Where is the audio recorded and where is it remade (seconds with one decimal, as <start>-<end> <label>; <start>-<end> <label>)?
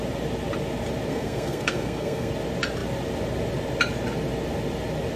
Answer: 0.0-1.1 recorded; 1.1-2.3 remade; 2.3-5.2 recorded